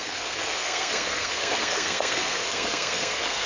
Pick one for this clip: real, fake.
fake